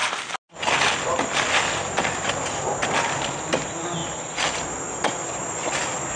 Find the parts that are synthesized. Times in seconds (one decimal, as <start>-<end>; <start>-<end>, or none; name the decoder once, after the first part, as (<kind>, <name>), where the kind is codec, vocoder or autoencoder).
none